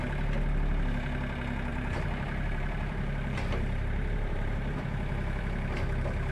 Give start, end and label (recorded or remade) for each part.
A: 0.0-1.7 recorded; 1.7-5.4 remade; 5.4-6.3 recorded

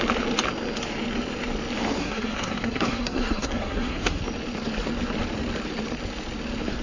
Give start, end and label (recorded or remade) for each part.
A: 0.0-2.0 recorded; 2.0-4.2 remade; 4.2-6.8 recorded

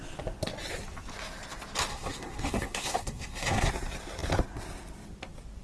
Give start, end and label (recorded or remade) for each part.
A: 0.0-1.9 recorded; 1.9-3.7 remade; 3.7-5.6 recorded

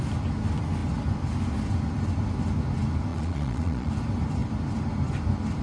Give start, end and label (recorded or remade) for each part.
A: 0.0-3.1 recorded; 3.1-3.9 remade; 3.9-5.6 recorded

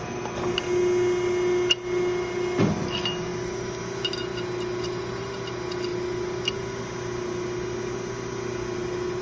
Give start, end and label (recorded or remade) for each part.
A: 0.0-9.2 recorded

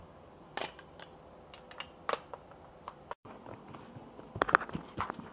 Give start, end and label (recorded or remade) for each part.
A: 0.0-5.3 recorded